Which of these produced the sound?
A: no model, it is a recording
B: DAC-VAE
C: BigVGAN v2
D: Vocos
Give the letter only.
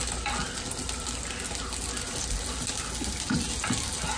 A